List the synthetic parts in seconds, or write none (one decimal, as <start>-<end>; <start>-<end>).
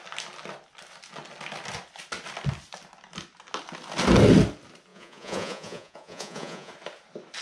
4.9-6.7